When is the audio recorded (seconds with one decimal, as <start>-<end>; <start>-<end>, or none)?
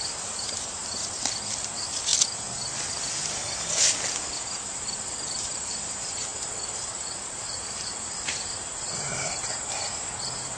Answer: 0.8-1.6; 2.1-4.7